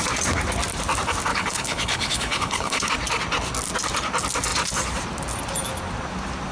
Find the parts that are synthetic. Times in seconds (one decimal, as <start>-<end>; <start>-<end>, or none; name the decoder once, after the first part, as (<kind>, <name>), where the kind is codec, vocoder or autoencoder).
1.3-2.9 (codec, HILCodec)